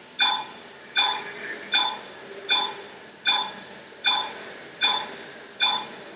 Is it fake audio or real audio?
real